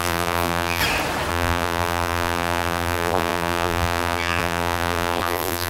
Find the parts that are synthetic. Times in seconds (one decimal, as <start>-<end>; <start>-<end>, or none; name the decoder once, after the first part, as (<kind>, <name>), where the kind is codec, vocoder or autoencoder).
0.0-0.8 (vocoder, BigVGAN v2); 1.3-5.7